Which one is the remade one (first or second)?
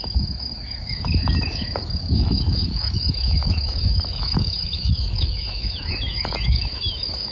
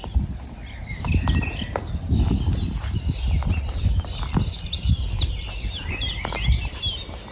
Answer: first